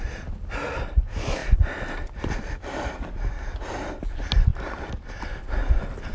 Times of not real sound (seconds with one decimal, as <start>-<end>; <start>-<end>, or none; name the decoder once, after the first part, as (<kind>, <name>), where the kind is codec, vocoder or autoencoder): 1.4-3.6 (vocoder, BigVGAN v2); 4.5-5.2